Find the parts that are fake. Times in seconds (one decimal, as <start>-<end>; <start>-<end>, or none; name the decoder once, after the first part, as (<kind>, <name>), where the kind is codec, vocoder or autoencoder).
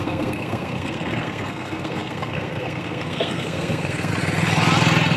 0.0-4.1 (codec, SNAC)